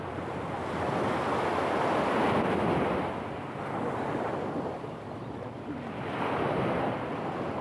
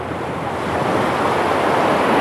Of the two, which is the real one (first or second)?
first